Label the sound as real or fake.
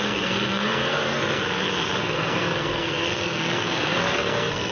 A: fake